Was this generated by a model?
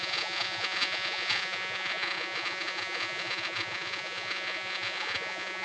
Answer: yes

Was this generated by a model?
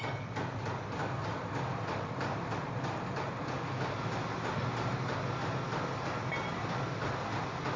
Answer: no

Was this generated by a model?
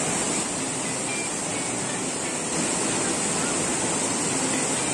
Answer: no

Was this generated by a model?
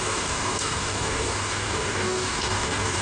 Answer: yes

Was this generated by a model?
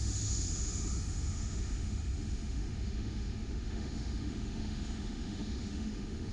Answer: yes